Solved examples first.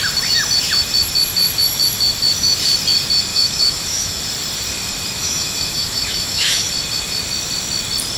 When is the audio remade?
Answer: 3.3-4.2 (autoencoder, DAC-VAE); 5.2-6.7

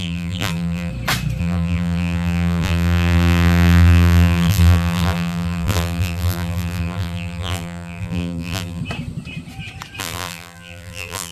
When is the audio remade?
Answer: 0.0-0.9 (vocoder, BigVGAN v2); 1.4-8.8; 10.0-11.3

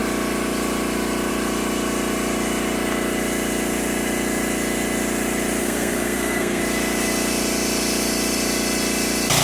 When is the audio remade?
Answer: 5.6-6.6 (codec, SNAC)

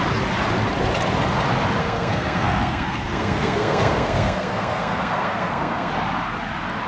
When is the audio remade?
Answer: 1.8-5.9 (codec, SNAC)

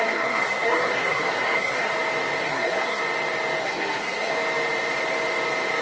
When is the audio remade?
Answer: 0.0-1.9 (codec, SNAC); 2.4-3.0; 3.6-4.3

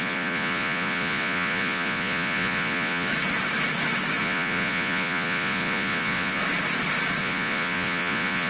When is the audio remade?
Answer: 0.0-3.1 (vocoder, Vocos); 4.2-6.4; 7.2-8.5